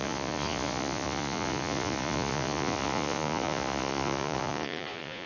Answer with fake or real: fake